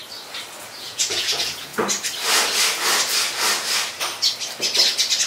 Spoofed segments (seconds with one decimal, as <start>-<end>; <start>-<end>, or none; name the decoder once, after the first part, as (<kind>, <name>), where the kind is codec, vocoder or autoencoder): 0.7-1.7 (vocoder, Vocos)